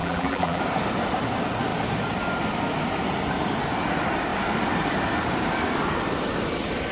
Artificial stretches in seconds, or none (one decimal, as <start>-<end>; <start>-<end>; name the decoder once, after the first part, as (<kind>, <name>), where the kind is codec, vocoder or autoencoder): 0.0-0.6 (vocoder, BigVGAN v2)